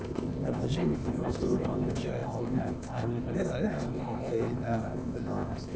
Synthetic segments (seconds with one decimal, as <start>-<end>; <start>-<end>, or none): 0.0-5.8